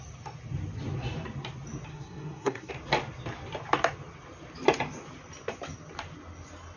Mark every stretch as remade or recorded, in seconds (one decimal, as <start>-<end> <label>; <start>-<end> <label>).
0.0-1.9 recorded; 1.9-2.7 remade; 2.7-6.8 recorded